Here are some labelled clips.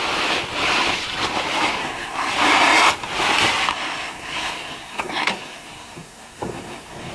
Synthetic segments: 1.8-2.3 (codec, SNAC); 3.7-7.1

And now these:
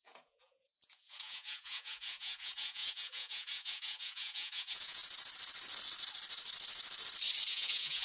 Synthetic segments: 0.0-5.0 (vocoder, Vocos); 7.5-8.0

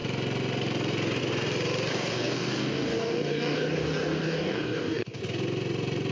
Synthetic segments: 1.9-5.2 (codec, DAC)

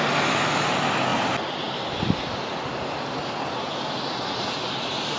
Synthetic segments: none

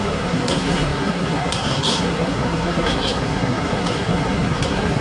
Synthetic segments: 0.0-5.0 (codec, SNAC)

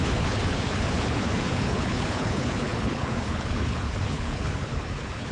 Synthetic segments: 0.0-5.3 (codec, HILCodec)